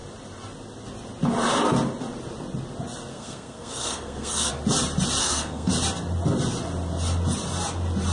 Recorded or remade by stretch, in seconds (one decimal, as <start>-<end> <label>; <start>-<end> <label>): 0.0-3.1 recorded; 3.1-4.5 remade; 4.5-5.2 recorded; 5.2-5.7 remade; 5.7-8.1 recorded